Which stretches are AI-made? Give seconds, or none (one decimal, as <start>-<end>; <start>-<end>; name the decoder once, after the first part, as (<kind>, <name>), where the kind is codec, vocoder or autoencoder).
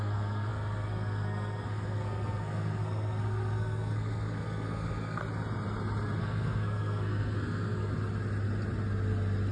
0.0-5.2 (codec, SNAC); 6.2-7.9